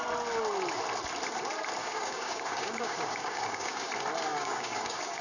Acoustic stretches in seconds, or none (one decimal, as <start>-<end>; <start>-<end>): 0.0-1.8; 3.9-4.3

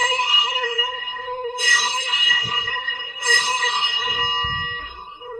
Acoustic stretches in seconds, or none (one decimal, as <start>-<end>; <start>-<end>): 4.2-4.8

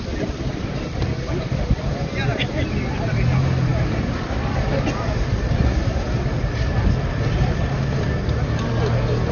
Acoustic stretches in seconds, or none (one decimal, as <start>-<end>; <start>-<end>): 0.0-9.3

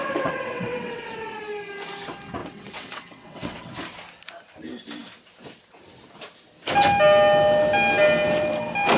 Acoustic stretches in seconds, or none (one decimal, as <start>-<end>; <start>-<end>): 1.4-2.4; 3.7-9.0